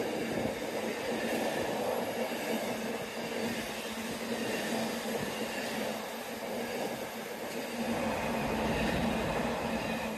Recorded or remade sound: recorded